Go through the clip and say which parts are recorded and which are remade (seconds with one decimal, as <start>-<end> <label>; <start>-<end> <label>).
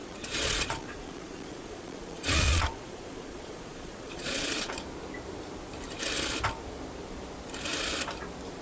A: 0.0-4.7 remade; 4.7-8.6 recorded